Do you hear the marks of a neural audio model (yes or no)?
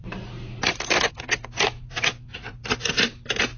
yes